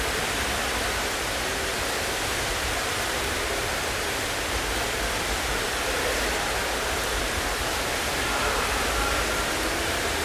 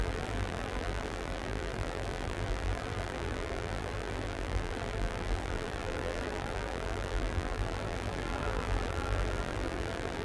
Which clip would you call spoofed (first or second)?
second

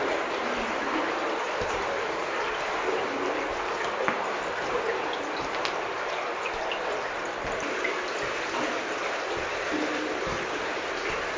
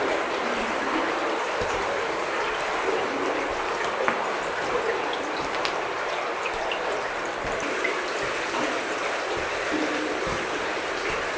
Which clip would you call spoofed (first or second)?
second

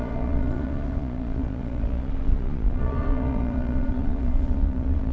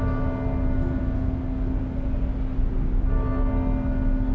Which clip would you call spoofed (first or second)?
first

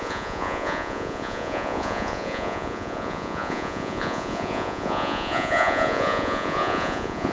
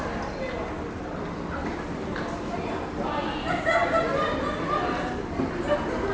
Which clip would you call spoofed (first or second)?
first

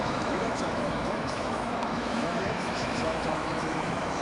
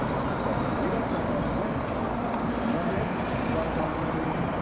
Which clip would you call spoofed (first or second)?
first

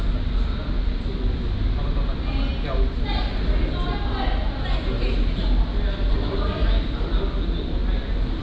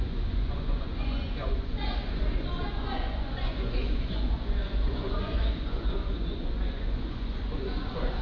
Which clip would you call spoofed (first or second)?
second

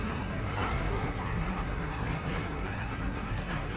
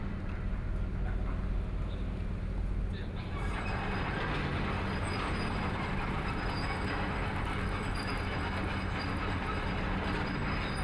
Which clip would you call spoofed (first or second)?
first